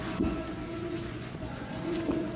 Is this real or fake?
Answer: fake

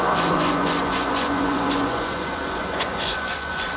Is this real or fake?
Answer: fake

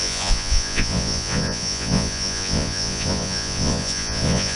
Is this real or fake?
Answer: fake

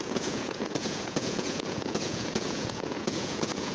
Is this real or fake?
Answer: fake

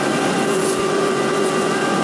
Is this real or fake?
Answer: fake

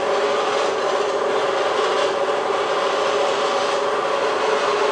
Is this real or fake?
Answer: real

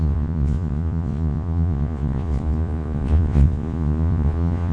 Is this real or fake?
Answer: fake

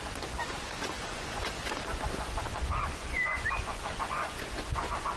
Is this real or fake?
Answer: fake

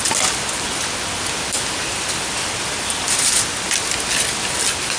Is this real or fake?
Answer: real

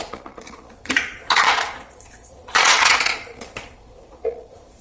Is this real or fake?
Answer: fake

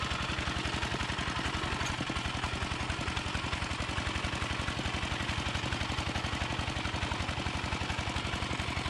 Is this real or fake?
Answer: real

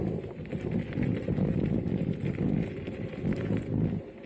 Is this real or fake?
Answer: real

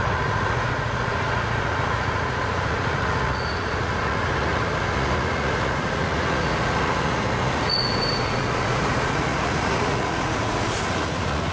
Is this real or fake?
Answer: fake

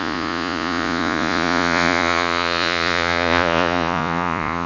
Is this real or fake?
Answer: fake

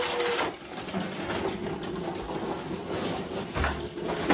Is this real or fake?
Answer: real